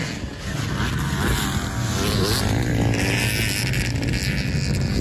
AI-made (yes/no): no